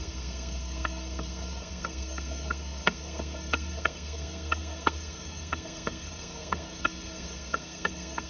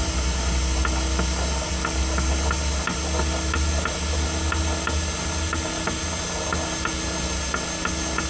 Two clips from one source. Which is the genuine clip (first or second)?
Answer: second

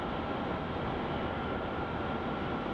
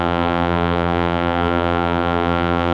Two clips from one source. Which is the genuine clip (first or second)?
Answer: first